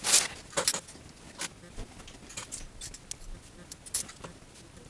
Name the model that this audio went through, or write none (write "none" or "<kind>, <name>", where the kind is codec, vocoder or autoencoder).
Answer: none